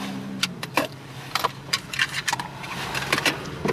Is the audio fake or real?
fake